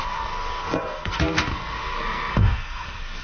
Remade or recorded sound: remade